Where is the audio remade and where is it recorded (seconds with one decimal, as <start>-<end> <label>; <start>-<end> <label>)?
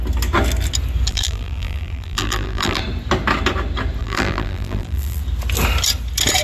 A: 0.0-1.1 recorded; 1.1-2.8 remade; 2.8-4.0 recorded; 4.0-5.2 remade; 5.2-6.4 recorded